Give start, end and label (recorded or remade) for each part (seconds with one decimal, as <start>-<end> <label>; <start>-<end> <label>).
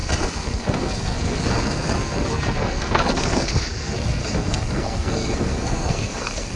0.0-6.6 remade